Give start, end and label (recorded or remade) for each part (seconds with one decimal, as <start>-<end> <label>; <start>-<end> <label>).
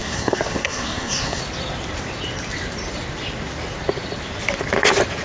0.0-1.4 remade; 1.4-5.2 recorded